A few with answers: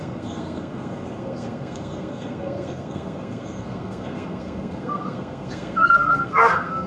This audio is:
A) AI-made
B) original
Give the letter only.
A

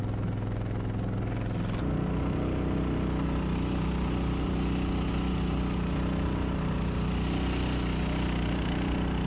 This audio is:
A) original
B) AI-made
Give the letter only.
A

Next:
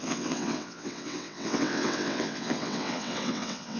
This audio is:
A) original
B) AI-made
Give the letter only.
B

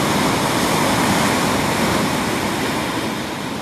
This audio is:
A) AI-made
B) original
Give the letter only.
B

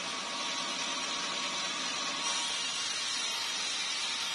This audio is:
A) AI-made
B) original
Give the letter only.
B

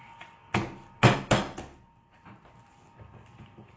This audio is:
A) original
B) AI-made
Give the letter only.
A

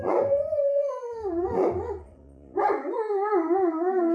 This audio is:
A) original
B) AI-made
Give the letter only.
B